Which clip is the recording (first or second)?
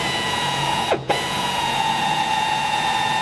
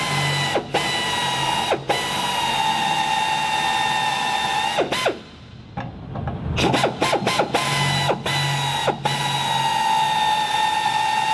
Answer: second